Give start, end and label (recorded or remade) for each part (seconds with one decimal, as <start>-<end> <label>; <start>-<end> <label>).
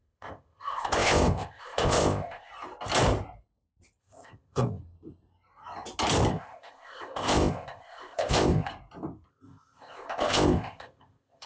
0.0-2.5 remade; 2.5-4.0 recorded; 4.0-4.8 remade; 4.8-6.3 recorded; 6.3-8.7 remade; 8.7-9.3 recorded; 9.3-11.5 remade